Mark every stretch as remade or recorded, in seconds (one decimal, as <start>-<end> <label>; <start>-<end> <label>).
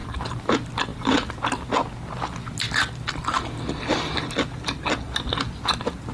0.0-0.5 remade; 0.5-6.1 recorded